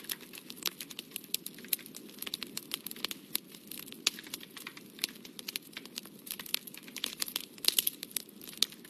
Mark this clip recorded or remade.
recorded